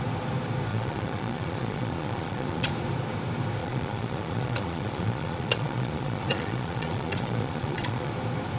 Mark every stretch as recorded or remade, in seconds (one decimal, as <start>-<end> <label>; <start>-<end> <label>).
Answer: 0.0-0.7 recorded; 0.7-2.7 remade; 2.7-3.6 recorded; 3.6-8.1 remade; 8.1-8.6 recorded